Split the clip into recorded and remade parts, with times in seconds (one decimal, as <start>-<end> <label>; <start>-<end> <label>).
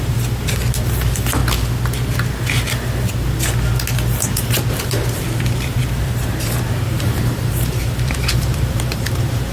0.0-1.4 remade; 1.4-4.7 recorded; 4.7-9.5 remade